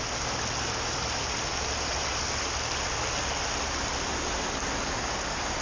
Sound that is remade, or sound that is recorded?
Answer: recorded